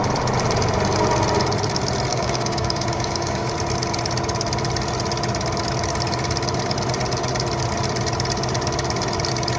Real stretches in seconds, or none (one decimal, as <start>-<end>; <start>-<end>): 0.0-2.1; 3.5-9.6